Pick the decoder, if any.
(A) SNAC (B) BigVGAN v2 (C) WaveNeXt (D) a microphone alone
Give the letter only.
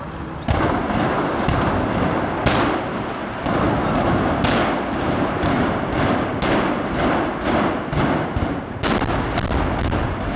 D